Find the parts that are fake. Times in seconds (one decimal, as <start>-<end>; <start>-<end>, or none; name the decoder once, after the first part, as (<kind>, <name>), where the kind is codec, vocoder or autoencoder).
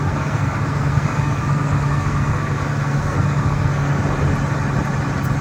0.0-4.0 (codec, SNAC)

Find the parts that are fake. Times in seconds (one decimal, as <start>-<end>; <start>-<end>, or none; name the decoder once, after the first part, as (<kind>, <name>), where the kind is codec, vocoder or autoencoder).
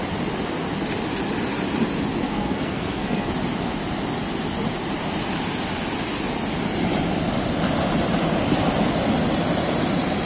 2.2-3.3 (codec, SNAC)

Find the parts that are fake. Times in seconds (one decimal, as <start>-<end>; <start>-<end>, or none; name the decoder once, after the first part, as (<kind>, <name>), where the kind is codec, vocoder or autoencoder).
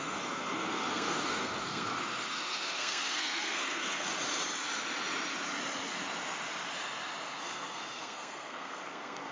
0.0-4.1 (codec, SNAC); 7.4-9.3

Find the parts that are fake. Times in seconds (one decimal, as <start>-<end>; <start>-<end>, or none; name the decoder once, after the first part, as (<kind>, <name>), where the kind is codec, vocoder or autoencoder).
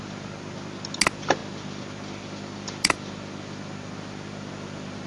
none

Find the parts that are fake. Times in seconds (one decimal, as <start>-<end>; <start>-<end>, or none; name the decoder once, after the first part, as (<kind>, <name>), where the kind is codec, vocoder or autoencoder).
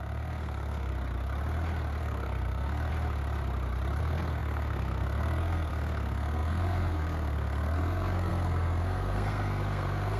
0.0-0.9 (codec, SNAC); 2.0-2.9; 4.0-10.2